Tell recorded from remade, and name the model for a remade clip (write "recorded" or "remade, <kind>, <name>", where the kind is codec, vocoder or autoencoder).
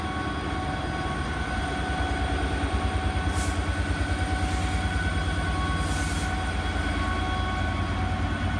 recorded